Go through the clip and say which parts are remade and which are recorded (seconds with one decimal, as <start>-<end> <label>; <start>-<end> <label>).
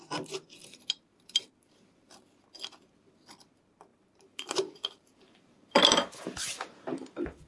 0.0-3.9 recorded; 3.9-7.5 remade